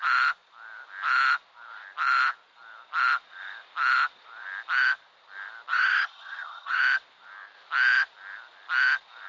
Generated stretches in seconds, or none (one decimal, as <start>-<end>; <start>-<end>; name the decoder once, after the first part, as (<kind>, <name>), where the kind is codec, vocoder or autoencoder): 5.7-6.8 (vocoder, HiFi-GAN)